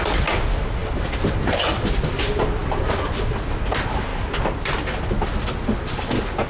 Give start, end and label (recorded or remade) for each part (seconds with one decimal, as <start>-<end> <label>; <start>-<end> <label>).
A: 0.0-4.1 remade; 4.1-5.0 recorded; 5.0-6.5 remade